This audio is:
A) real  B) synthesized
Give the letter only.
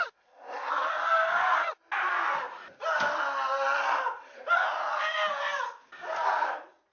A